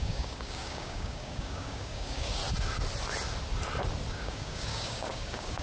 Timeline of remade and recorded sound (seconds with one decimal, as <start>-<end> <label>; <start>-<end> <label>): 0.0-2.4 remade; 2.4-4.1 recorded; 4.1-5.6 remade